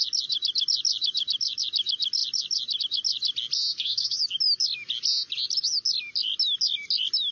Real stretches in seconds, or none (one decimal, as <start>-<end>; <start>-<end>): 0.0-3.7; 4.2-7.3